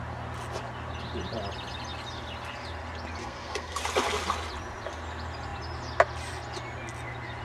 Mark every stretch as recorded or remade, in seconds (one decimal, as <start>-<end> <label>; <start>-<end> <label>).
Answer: 0.0-3.2 recorded; 3.2-3.8 remade; 3.8-7.4 recorded